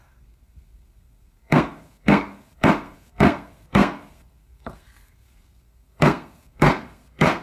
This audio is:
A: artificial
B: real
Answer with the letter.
A